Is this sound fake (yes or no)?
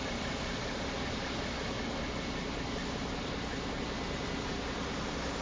no